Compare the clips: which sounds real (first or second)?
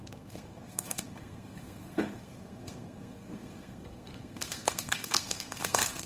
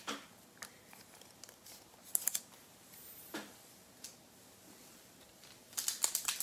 second